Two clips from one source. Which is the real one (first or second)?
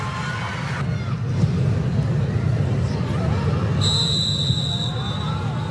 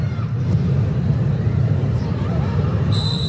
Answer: first